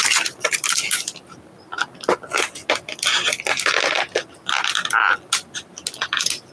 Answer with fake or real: real